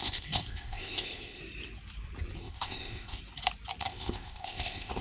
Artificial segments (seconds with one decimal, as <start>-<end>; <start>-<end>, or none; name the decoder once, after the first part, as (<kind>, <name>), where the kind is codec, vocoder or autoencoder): 0.0-1.4 (codec, ZipCodec); 2.4-3.2; 3.8-5.0